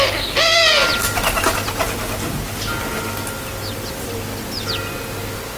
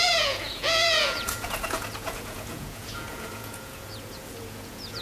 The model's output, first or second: second